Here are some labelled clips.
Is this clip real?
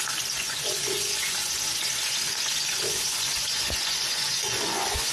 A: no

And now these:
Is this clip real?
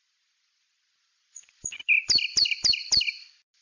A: yes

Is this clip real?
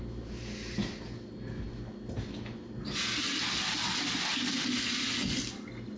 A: yes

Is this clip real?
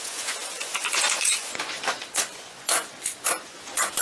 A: no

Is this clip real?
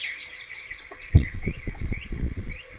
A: no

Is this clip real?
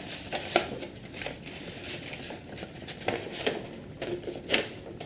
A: yes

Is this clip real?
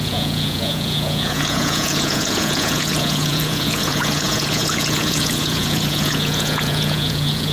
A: no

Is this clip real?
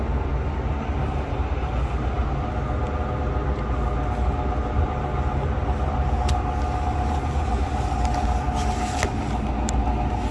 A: yes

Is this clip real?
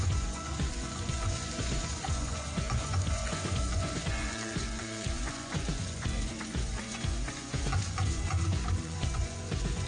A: no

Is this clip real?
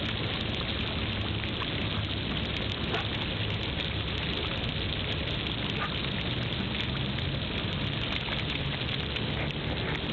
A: yes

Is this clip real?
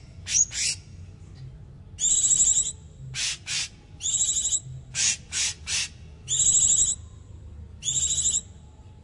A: yes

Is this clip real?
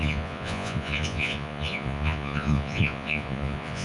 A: no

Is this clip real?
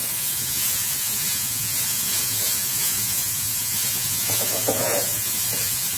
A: no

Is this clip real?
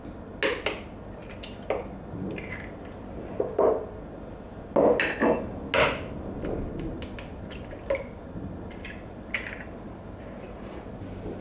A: yes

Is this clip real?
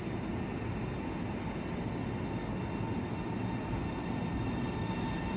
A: yes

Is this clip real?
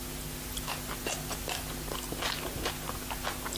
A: yes